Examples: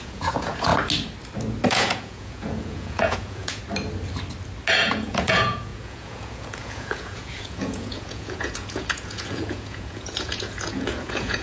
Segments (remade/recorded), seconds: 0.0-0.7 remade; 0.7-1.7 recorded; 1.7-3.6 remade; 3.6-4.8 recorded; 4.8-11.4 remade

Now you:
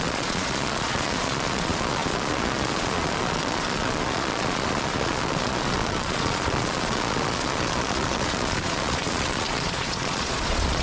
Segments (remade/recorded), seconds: 0.0-10.8 remade

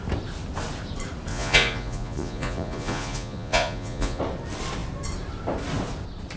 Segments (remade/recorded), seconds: 0.0-1.3 recorded; 1.3-4.2 remade; 4.2-6.4 recorded

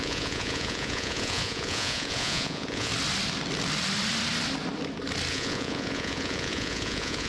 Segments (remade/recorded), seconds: 0.0-2.9 remade; 2.9-5.3 recorded; 5.3-7.3 remade

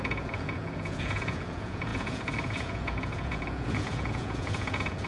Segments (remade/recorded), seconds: 0.0-5.1 remade